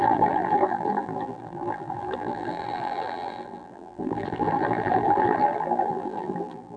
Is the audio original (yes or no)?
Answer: no